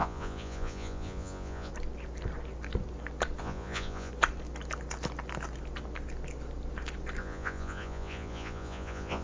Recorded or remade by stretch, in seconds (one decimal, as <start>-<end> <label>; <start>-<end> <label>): 0.0-1.7 remade; 1.7-3.4 recorded; 3.4-4.1 remade; 4.1-7.2 recorded; 7.2-9.2 remade